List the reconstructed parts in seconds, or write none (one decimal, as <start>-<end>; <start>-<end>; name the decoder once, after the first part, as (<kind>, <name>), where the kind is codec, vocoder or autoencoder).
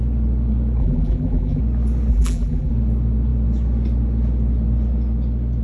0.8-1.6 (vocoder, BigVGAN v2); 2.1-2.7